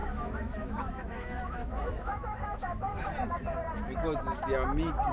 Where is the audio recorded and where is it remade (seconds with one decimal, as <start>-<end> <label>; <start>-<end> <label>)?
0.0-3.1 remade; 3.1-5.1 recorded